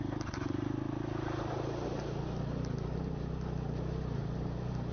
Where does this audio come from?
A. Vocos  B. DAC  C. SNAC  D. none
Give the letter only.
D